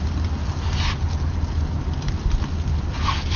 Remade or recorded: recorded